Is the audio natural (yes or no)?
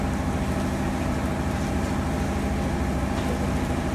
yes